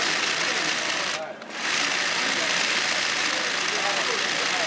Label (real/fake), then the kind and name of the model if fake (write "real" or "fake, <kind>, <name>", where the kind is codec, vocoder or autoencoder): real